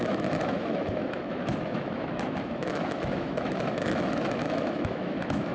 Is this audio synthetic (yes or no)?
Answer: yes